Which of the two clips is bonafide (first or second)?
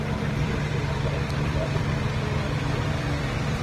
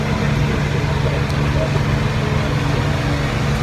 second